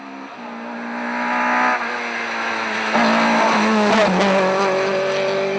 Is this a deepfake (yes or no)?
no